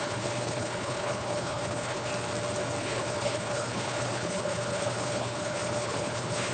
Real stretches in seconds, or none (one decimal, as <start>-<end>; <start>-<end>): 2.1-2.8